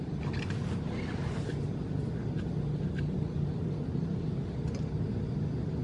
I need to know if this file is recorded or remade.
recorded